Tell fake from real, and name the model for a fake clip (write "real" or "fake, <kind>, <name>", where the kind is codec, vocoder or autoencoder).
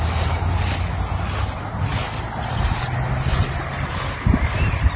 real